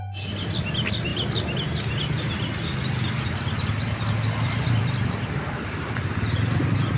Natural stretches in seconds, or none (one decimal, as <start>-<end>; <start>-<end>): 0.0-7.0